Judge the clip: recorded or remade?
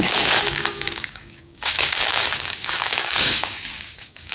remade